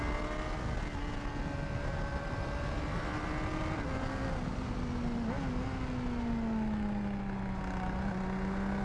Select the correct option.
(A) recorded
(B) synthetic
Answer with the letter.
A